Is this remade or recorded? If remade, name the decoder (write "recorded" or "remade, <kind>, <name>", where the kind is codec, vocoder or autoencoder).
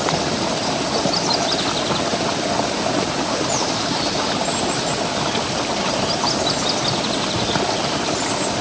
recorded